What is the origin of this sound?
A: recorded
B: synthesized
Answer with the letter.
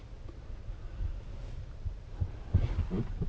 A